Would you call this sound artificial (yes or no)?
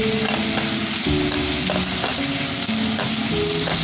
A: no